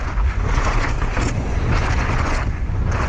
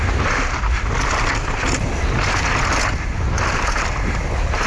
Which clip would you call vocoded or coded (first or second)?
first